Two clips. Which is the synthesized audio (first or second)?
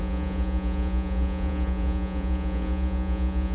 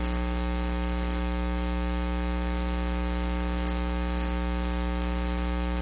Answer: first